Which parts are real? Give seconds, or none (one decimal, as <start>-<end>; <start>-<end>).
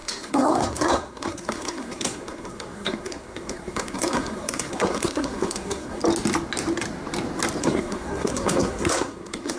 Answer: 6.0-7.6